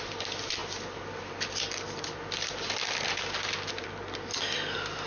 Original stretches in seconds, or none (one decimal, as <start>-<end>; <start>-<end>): 0.0-5.1